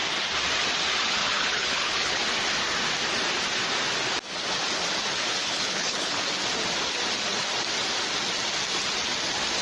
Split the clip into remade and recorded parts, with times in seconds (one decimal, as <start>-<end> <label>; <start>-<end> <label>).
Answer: 0.0-1.2 recorded; 1.2-2.2 remade; 2.2-5.4 recorded; 5.4-6.2 remade; 6.2-9.6 recorded